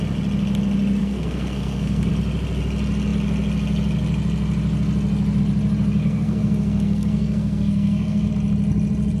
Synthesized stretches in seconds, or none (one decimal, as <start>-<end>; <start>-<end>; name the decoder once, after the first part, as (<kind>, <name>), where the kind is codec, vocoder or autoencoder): 1.0-2.1 (codec, SNAC); 6.0-8.3